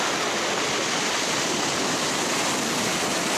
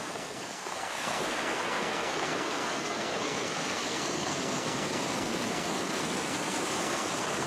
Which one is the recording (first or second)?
first